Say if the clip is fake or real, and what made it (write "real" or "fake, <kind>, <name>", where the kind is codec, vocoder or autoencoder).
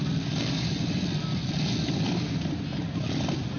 real